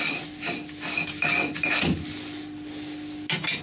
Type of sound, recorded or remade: recorded